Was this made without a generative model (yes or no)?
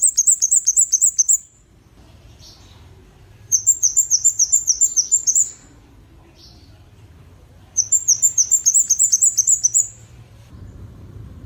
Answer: no